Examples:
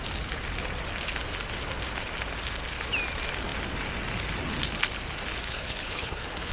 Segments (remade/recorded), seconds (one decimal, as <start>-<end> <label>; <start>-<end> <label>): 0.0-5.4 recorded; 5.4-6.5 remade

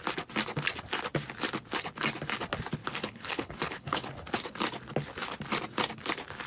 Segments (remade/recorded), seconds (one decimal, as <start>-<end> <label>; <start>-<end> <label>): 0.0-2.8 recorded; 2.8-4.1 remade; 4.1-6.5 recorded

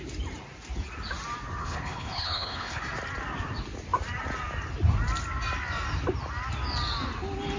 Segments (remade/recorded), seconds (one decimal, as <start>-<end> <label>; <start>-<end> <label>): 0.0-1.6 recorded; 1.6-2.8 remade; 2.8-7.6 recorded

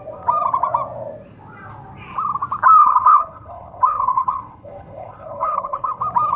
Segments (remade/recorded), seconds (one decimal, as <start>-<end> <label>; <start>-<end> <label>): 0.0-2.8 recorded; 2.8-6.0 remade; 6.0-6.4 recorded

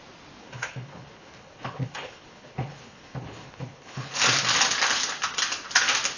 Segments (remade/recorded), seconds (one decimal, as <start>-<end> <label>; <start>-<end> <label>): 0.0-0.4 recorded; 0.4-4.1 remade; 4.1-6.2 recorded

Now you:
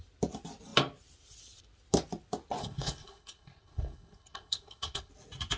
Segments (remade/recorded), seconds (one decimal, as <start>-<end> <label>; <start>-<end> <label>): 0.0-2.6 recorded; 2.6-5.1 remade; 5.1-5.6 recorded